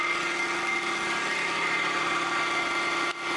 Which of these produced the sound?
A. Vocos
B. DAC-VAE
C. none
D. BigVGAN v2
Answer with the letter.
C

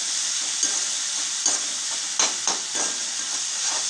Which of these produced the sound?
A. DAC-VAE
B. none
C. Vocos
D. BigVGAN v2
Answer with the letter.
B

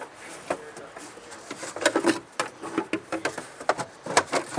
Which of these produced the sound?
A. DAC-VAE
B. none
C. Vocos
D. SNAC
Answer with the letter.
B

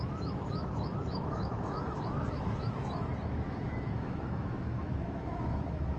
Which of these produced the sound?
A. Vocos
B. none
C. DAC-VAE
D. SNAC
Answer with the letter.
C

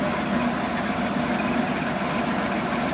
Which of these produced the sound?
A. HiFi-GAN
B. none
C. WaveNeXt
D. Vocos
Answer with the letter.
B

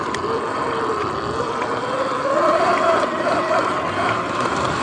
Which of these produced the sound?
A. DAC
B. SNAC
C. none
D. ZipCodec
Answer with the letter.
C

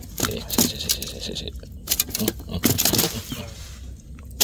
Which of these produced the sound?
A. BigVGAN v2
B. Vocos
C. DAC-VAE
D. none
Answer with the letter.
D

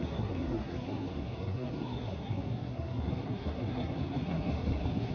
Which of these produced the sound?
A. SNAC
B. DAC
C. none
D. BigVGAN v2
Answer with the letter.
A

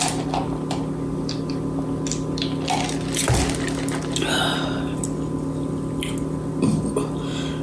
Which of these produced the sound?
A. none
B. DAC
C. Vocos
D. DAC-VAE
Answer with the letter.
A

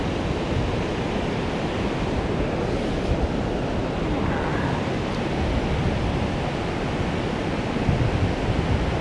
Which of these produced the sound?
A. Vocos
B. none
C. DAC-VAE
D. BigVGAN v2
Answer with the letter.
B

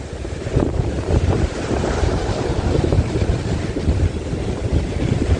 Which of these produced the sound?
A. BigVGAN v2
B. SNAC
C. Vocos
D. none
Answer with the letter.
A